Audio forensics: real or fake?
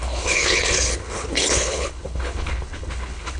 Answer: fake